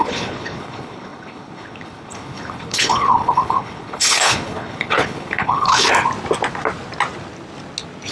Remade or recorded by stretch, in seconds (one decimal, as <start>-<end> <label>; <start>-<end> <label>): 0.0-5.9 remade; 5.9-8.1 recorded